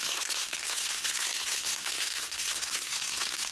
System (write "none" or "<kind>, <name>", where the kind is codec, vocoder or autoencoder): codec, SNAC